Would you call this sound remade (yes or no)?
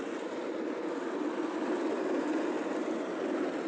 no